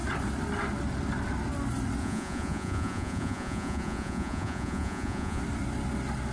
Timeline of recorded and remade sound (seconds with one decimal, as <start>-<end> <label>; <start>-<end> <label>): 0.0-2.0 recorded; 2.0-5.4 remade; 5.4-6.3 recorded